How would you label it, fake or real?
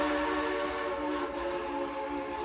real